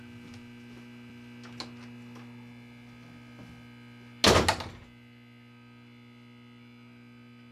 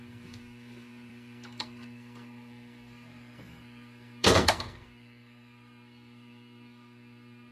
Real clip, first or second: first